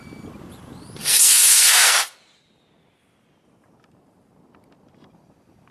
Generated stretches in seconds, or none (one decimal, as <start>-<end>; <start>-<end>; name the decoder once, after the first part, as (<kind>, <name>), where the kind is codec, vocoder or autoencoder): 1.0-2.2 (codec, SNAC)